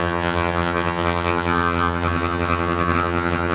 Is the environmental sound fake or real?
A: fake